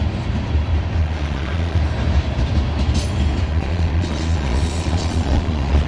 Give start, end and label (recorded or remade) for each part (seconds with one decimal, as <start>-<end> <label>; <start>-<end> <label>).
0.0-1.0 recorded; 1.0-1.8 remade; 1.8-3.5 recorded; 3.5-5.9 remade